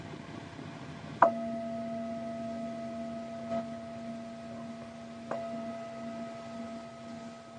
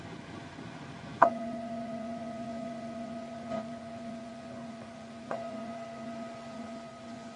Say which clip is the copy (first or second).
second